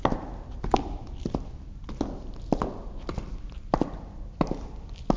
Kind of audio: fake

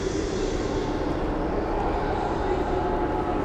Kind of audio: real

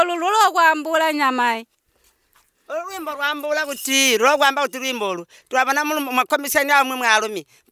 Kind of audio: real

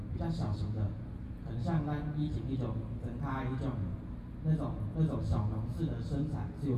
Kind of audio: real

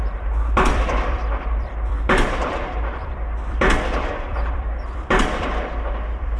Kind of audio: fake